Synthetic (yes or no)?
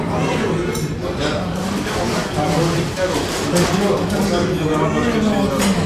no